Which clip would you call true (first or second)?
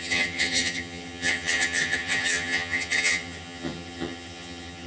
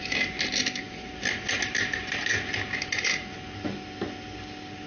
second